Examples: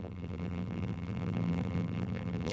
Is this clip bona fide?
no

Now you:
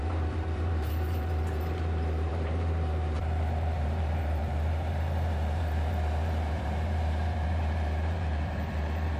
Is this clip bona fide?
no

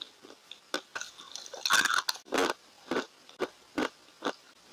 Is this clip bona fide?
yes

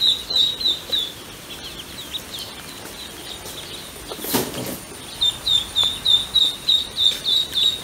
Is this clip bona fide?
yes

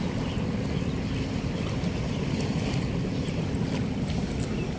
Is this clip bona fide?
yes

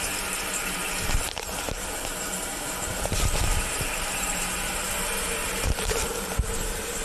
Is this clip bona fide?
no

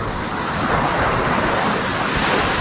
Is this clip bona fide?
yes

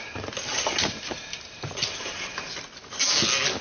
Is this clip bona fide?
yes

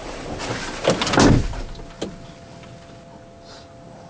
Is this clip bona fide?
yes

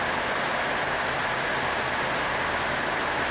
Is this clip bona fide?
yes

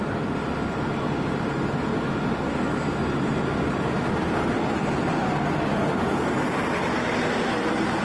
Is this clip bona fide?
yes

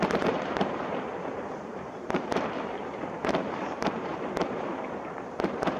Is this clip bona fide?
no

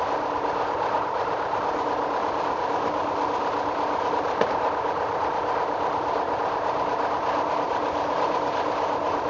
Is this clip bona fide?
yes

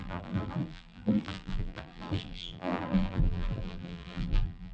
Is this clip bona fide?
no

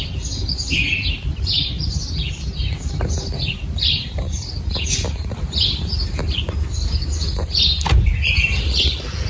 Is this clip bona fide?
yes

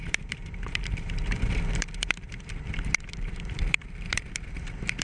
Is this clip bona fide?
no